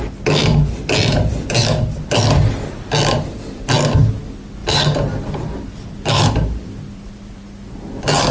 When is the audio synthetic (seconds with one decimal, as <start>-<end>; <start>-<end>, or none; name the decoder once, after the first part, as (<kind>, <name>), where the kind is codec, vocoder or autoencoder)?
4.6-7.4 (vocoder, BigVGAN v2)